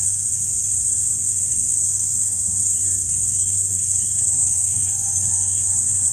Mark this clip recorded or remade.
remade